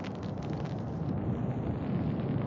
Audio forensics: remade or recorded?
recorded